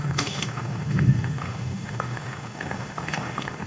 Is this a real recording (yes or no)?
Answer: no